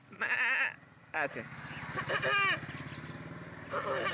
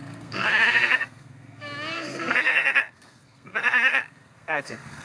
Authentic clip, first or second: first